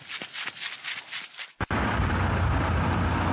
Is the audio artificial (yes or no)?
no